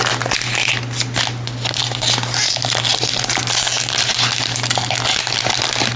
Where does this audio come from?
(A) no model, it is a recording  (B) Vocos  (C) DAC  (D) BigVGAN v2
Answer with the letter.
A